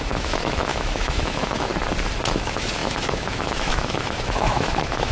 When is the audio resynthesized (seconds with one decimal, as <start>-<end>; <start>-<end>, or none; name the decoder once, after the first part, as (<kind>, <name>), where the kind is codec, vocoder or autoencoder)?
0.0-1.7 (autoencoder, DAC-VAE); 2.3-5.1